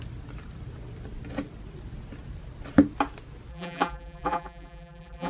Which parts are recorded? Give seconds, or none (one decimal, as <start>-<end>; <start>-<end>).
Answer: 0.0-3.5